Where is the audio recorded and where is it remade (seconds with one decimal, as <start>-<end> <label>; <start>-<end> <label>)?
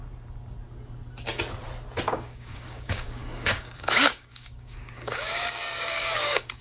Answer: 0.0-2.1 recorded; 2.1-6.6 remade